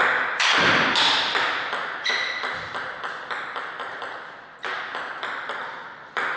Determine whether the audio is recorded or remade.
recorded